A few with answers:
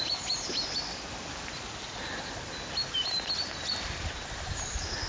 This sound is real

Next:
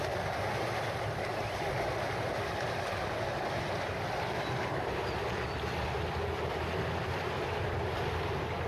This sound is real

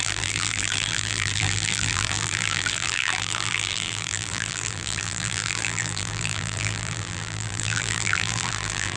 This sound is fake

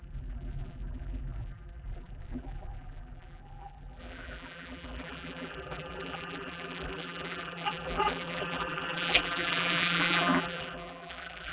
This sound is fake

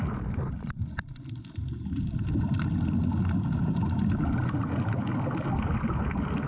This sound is real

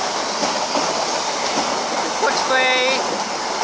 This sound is real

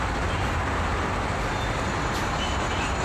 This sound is real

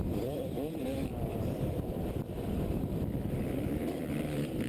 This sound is fake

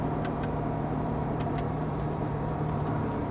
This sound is fake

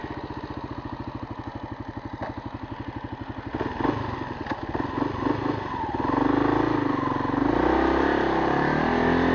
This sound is real